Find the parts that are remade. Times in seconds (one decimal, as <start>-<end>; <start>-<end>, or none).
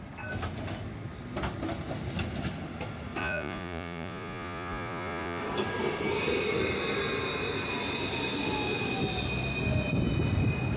3.2-5.4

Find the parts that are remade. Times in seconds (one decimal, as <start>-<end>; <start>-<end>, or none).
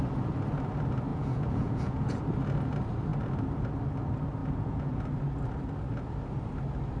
1.1-2.2; 4.4-5.0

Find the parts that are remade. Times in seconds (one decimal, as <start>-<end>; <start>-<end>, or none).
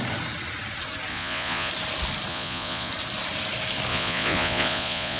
1.1-1.7; 2.3-2.9; 3.9-5.2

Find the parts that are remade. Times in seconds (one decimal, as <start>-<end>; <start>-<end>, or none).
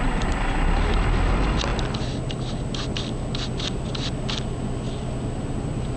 none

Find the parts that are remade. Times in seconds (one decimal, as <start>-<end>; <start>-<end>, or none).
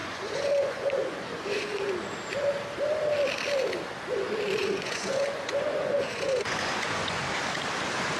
0.0-1.7; 4.6-7.2